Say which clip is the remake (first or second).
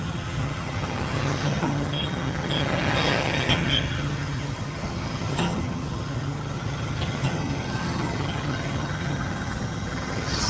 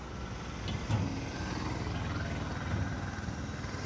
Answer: first